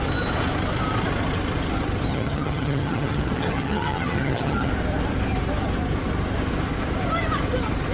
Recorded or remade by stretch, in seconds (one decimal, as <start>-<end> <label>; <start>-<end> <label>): 0.0-2.1 recorded; 2.1-4.7 remade; 4.7-7.9 recorded